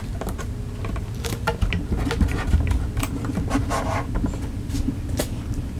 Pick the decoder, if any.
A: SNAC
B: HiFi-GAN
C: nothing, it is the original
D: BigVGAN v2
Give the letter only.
C